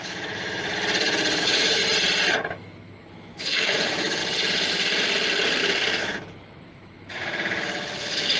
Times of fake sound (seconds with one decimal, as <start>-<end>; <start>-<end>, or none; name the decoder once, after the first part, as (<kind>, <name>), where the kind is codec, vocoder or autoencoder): 0.0-0.7 (autoencoder, DAC-VAE); 1.4-1.8; 2.4-4.2; 6.0-8.4